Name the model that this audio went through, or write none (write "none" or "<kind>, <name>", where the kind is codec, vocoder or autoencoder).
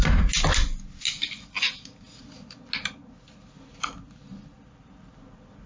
none